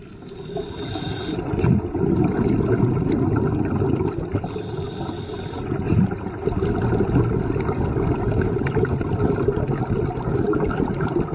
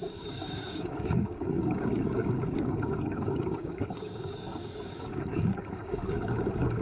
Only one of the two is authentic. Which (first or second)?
first